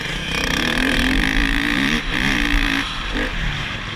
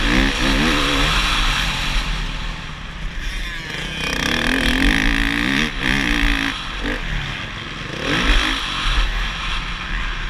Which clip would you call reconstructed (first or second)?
first